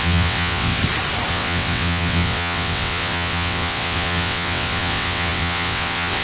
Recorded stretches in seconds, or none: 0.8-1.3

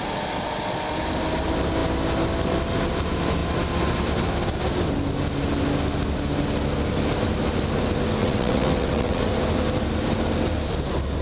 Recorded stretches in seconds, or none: 0.0-8.2; 9.3-11.2

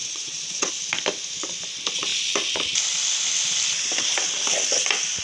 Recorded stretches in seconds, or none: 0.7-5.2

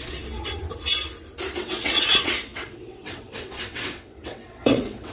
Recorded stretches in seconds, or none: 0.7-1.6

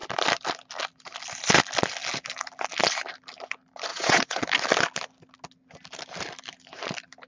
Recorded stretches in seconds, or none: 0.0-3.9; 4.4-7.3

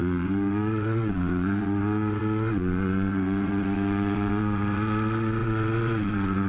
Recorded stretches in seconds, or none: none

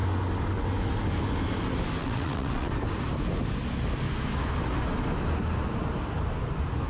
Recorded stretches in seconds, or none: 0.0-2.0; 2.7-6.9

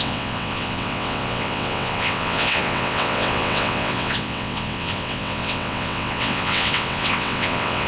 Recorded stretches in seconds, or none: none